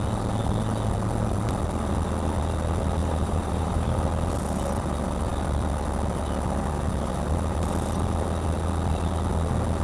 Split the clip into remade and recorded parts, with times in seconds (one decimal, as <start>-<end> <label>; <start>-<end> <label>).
0.0-3.0 recorded; 3.0-4.0 remade; 4.0-9.8 recorded